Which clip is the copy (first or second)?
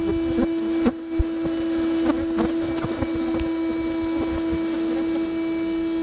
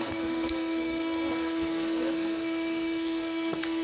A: second